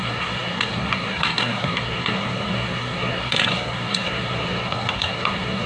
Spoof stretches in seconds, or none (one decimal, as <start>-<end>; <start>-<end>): 0.0-5.7